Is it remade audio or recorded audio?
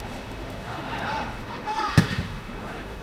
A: remade